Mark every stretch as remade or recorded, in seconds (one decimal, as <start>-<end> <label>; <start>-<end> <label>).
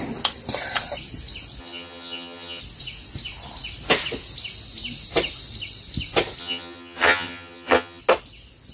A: 0.0-1.6 recorded; 1.6-2.6 remade; 2.6-6.4 recorded; 6.4-8.0 remade; 8.0-8.7 recorded